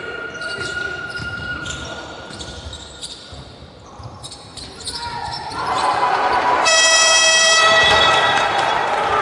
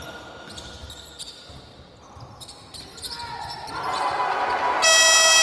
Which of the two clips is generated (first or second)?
first